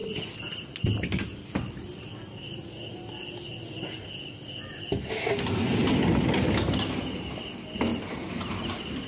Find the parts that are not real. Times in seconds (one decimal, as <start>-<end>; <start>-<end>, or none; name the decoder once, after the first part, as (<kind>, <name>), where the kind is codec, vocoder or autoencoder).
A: 7.9-9.1 (vocoder, BigVGAN v2)